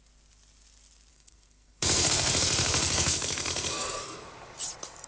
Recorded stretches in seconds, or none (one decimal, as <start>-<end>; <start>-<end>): 0.0-1.1; 4.2-5.1